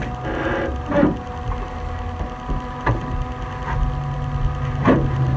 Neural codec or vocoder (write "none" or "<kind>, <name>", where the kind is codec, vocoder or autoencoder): none